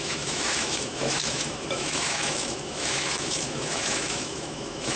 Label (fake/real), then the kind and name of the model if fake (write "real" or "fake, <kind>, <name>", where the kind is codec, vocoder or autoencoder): fake, autoencoder, DAC-VAE